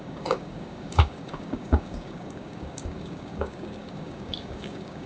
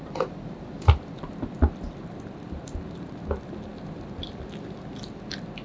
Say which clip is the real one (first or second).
second